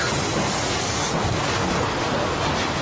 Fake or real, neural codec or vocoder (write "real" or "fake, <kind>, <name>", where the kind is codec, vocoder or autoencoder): real